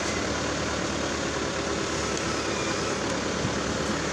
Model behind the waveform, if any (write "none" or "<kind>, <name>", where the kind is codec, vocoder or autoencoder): none